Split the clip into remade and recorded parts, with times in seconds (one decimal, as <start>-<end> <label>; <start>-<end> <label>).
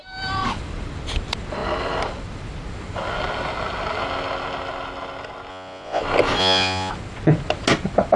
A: 0.0-5.5 recorded; 5.5-6.0 remade; 6.0-6.4 recorded; 6.4-6.9 remade; 6.9-8.2 recorded